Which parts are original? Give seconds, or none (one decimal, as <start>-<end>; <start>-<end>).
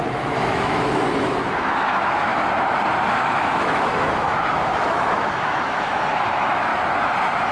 2.3-3.1; 6.7-7.5